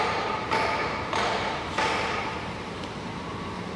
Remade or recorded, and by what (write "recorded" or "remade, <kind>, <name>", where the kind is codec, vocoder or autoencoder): remade, vocoder, BigVGAN v2